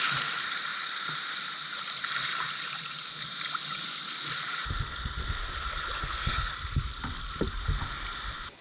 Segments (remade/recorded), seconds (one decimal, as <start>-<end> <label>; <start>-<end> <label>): 0.0-6.0 recorded; 6.0-6.5 remade; 6.5-8.6 recorded